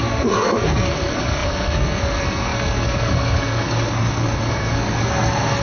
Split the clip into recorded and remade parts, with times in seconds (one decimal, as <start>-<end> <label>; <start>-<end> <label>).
0.0-5.6 remade